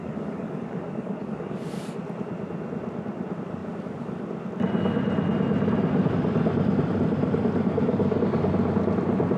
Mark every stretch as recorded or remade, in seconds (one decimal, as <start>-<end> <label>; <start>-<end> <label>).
0.0-2.0 remade; 2.0-8.0 recorded; 8.0-8.5 remade; 8.5-9.4 recorded